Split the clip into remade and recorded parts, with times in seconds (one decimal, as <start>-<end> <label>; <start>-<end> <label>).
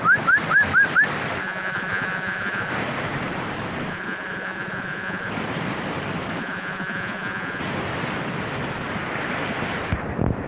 0.0-1.4 recorded; 1.4-2.7 remade; 2.7-3.9 recorded; 3.9-5.3 remade; 5.3-6.4 recorded; 6.4-7.6 remade; 7.6-10.5 recorded